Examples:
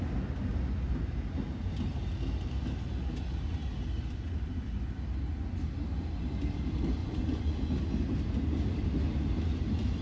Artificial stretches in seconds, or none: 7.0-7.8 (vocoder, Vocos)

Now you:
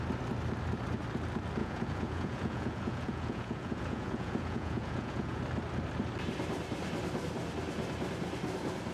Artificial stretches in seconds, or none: 1.6-5.4 (vocoder, Vocos)

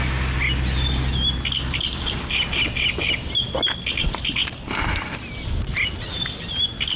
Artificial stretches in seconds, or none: none

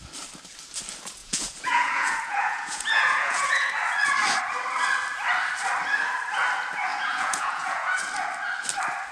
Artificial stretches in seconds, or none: 1.2-3.7 (vocoder, Vocos); 6.9-8.1

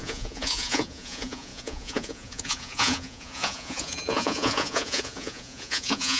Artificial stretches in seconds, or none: 0.0-6.2 (vocoder, Vocos)